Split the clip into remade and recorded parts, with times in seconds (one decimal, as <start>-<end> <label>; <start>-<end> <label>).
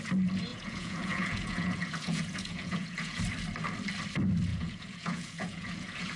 0.0-0.5 recorded; 0.5-3.2 remade; 3.2-4.5 recorded; 4.5-6.2 remade